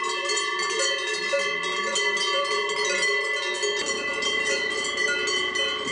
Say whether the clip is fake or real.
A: real